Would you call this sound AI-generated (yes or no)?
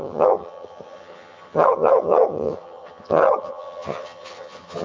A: yes